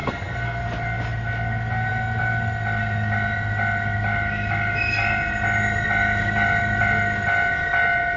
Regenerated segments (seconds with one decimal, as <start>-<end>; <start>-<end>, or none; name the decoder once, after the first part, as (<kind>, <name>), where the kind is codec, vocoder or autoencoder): 0.0-0.6 (codec, SNAC)